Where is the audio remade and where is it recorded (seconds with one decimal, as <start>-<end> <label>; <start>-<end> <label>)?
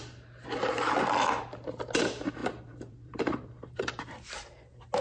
0.0-2.4 recorded; 2.4-4.0 remade; 4.0-5.0 recorded